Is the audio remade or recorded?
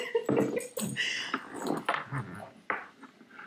recorded